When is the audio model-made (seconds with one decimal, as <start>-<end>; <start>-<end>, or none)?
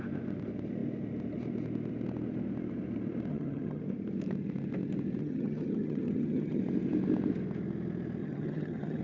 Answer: 3.3-3.8; 5.2-6.6; 8.2-9.0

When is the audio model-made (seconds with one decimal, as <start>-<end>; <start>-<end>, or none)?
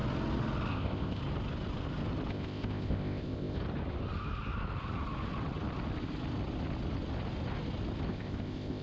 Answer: 0.7-1.2; 2.3-3.6; 8.1-8.8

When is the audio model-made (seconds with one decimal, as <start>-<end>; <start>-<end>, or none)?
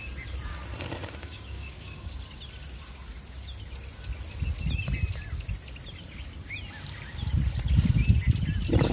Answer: 1.2-2.1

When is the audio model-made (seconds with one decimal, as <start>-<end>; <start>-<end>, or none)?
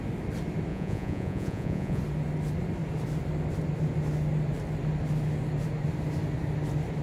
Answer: 0.7-2.0